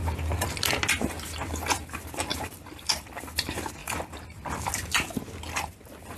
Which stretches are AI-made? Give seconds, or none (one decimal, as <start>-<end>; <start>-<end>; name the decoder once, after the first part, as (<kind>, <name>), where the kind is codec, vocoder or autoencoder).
2.3-3.4 (vocoder, BigVGAN v2); 3.8-4.5